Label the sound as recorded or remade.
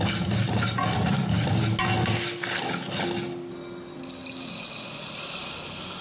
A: recorded